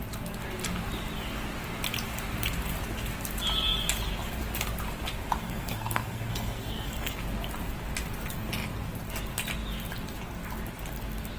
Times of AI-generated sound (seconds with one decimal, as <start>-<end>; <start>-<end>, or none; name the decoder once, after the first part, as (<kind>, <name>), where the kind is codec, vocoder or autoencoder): 5.4-7.2 (codec, SNAC)